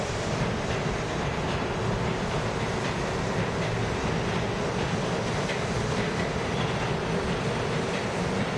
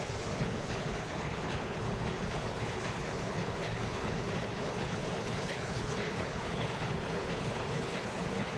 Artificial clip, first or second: second